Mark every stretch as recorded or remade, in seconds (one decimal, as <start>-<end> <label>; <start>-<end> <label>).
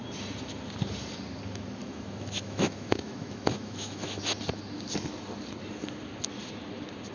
0.0-1.8 recorded; 1.8-4.2 remade; 4.2-7.1 recorded